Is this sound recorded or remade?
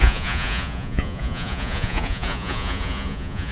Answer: remade